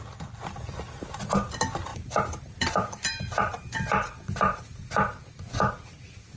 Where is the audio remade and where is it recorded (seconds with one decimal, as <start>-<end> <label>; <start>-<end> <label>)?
0.0-1.9 recorded; 1.9-4.6 remade; 4.6-6.4 recorded